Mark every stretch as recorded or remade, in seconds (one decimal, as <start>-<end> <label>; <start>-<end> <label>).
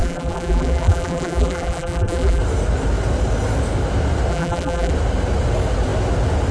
0.0-2.4 remade; 2.4-4.3 recorded; 4.3-4.9 remade; 4.9-6.5 recorded